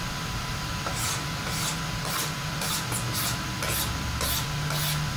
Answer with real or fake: real